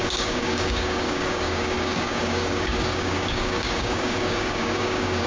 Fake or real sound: fake